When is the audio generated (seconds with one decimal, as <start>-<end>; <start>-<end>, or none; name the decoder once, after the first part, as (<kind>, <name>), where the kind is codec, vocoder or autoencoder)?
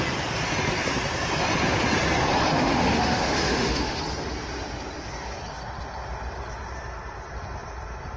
2.5-4.0 (autoencoder, DAC-VAE)